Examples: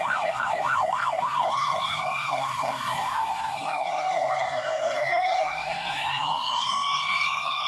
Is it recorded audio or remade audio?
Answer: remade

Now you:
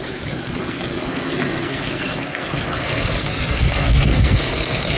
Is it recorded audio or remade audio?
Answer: remade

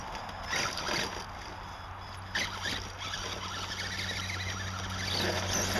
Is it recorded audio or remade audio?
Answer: recorded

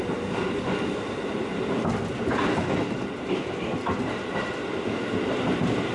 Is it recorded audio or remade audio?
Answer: recorded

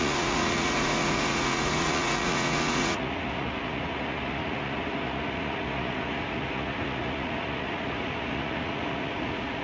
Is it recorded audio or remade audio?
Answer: remade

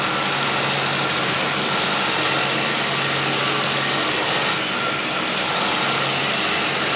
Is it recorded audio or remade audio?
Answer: recorded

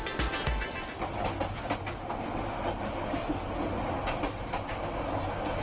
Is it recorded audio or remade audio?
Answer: recorded